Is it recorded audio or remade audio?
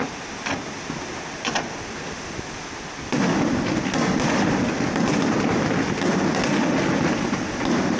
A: recorded